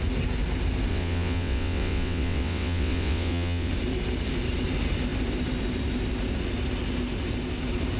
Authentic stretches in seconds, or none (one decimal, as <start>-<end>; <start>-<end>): 0.0-0.9; 3.7-8.0